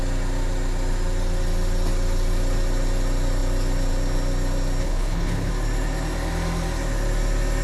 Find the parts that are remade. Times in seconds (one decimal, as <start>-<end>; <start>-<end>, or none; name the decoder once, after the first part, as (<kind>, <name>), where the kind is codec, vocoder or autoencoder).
4.8-5.5 (codec, HILCodec)